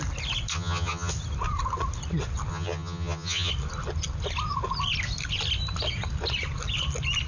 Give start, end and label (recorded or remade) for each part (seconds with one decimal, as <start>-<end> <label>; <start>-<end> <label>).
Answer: 0.0-0.5 recorded; 0.5-1.1 remade; 1.1-2.5 recorded; 2.5-3.5 remade; 3.5-7.3 recorded